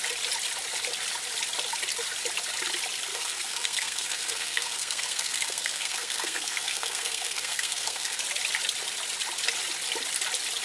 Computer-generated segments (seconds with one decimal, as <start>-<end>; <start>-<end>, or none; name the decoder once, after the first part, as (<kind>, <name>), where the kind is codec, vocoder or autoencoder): 3.1-8.2 (codec, SNAC)